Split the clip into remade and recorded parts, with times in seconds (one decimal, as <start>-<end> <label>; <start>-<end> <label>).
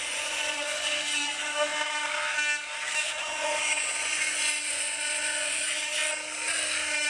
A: 0.0-1.7 remade; 1.7-3.0 recorded; 3.0-6.0 remade; 6.0-7.1 recorded